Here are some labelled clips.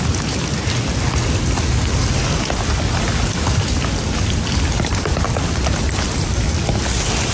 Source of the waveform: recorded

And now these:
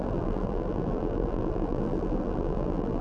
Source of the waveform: remade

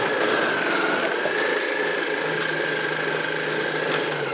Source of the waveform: recorded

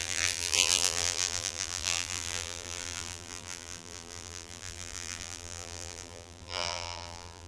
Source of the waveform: remade